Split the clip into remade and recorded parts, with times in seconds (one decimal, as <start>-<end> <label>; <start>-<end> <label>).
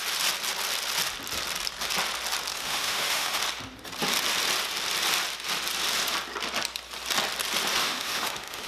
0.0-2.5 recorded; 2.5-3.4 remade; 3.4-7.8 recorded; 7.8-8.7 remade